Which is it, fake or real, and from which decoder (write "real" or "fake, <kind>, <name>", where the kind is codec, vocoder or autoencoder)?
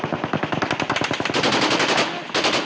real